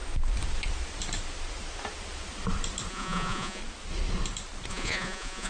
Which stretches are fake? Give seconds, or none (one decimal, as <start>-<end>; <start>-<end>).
2.9-3.6; 4.7-5.5